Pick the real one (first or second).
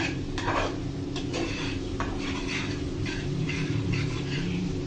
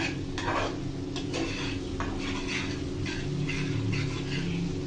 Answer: second